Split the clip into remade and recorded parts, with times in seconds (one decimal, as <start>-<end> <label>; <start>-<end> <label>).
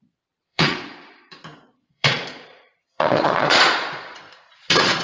0.0-5.0 remade